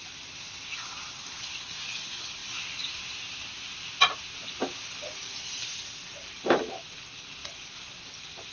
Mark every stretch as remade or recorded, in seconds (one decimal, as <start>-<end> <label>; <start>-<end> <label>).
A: 0.0-6.1 recorded; 6.1-6.8 remade; 6.8-8.5 recorded